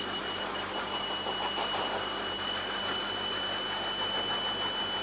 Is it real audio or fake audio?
real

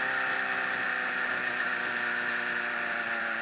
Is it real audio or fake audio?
real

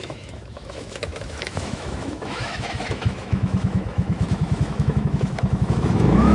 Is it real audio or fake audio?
fake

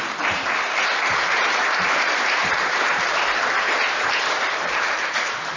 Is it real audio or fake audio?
fake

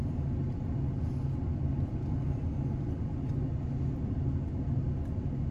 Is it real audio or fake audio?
real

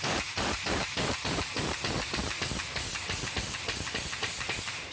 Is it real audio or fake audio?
real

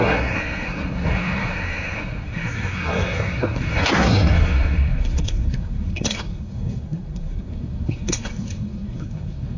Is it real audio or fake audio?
fake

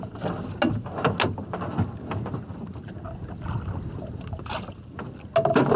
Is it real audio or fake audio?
real